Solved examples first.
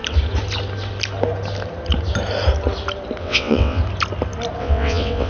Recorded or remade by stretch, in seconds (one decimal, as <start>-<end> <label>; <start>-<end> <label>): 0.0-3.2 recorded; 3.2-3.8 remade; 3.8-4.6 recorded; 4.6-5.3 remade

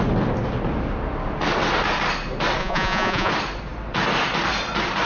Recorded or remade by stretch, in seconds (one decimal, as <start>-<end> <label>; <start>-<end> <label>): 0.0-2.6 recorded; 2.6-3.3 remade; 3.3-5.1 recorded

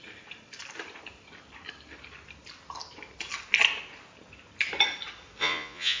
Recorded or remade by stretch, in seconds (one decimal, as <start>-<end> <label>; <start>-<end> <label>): 0.0-5.4 recorded; 5.4-6.0 remade

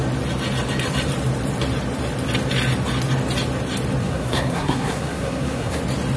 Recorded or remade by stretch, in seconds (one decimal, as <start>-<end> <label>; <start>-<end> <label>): 0.0-4.0 recorded; 4.0-5.8 remade; 5.8-6.2 recorded

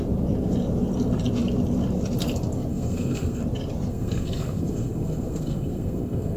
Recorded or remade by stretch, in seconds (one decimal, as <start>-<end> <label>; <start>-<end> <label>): 0.0-2.7 recorded; 2.7-3.4 remade; 3.4-3.9 recorded; 3.9-6.4 remade

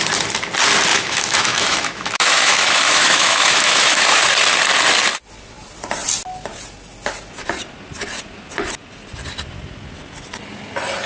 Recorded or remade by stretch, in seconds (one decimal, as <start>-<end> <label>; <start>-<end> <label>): 0.0-0.9 recorded; 0.9-4.2 remade; 4.2-11.1 recorded